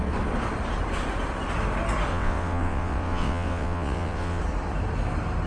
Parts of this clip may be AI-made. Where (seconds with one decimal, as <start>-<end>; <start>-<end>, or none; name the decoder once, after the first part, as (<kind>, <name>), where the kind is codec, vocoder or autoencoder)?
2.1-4.4 (vocoder, WaveNeXt)